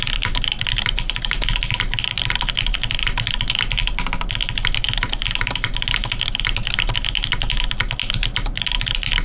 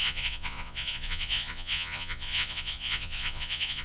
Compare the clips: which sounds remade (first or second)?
second